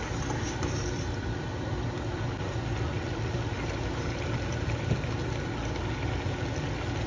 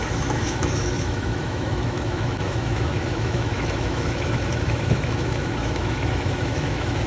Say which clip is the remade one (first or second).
second